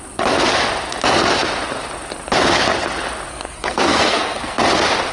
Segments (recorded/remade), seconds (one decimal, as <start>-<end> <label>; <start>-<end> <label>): 0.0-3.3 recorded; 3.3-4.6 remade; 4.6-5.1 recorded